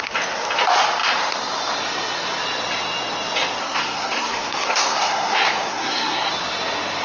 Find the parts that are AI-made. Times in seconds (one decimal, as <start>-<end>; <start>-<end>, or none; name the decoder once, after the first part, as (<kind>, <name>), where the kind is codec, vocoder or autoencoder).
3.6-6.3 (codec, SNAC)